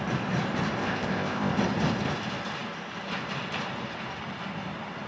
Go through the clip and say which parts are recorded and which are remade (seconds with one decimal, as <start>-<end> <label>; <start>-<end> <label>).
0.0-0.8 recorded; 0.8-1.5 remade; 1.5-5.1 recorded